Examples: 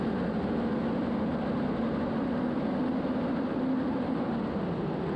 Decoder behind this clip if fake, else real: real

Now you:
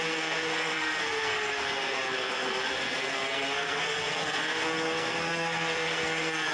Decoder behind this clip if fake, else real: fake, codec, SNAC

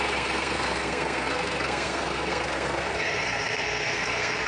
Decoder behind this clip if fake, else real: fake, codec, SNAC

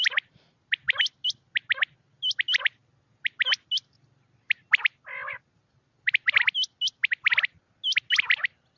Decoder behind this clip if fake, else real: real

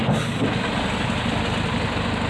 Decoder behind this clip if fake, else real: real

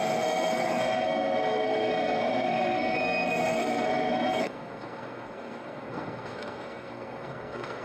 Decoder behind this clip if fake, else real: fake, codec, SNAC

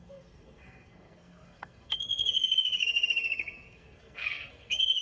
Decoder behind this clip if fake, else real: fake, codec, SNAC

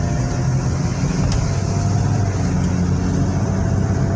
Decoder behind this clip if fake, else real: real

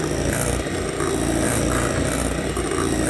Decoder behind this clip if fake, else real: real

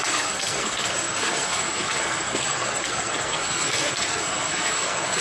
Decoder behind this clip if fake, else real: fake, codec, SNAC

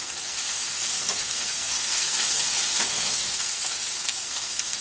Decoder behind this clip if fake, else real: fake, codec, SNAC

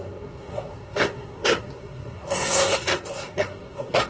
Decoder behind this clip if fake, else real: fake, codec, SNAC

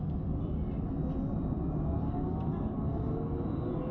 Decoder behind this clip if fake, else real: real